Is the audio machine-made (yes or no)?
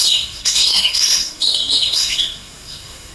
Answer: yes